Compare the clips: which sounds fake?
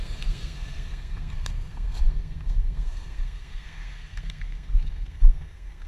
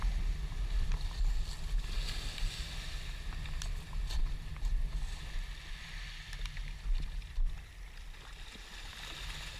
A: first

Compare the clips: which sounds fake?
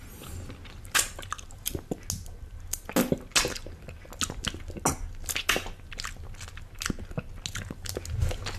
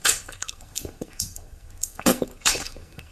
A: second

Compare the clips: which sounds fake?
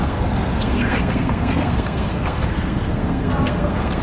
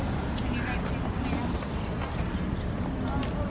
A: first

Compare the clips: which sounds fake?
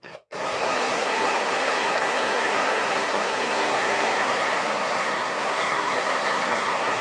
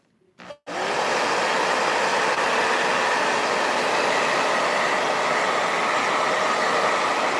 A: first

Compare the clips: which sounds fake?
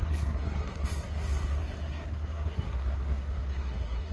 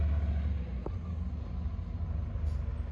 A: first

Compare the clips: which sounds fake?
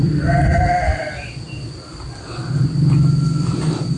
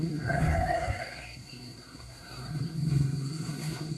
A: second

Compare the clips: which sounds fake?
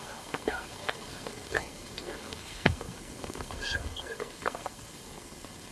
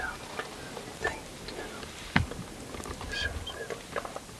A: first